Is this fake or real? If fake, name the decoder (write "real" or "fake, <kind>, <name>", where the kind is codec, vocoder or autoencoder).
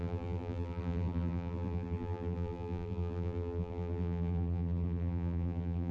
fake, vocoder, BigVGAN v2